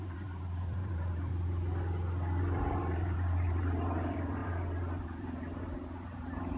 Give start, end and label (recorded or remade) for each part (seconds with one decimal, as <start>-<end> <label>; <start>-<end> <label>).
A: 0.0-1.3 remade; 1.3-2.4 recorded; 2.4-6.6 remade